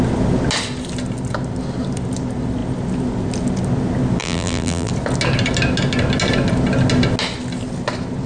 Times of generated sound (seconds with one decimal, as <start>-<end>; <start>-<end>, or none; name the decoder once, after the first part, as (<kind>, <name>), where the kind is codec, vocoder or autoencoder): 4.2-4.9 (vocoder, BigVGAN v2)